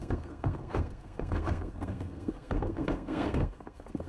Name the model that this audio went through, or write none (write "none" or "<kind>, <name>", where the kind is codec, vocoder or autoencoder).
codec, SNAC